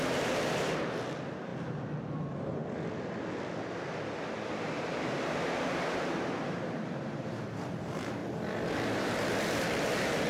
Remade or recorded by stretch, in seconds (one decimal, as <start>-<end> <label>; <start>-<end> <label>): 0.0-1.5 remade; 1.5-2.2 recorded; 2.2-2.6 remade; 2.6-4.4 recorded; 4.4-8.2 remade; 8.2-8.7 recorded; 8.7-10.3 remade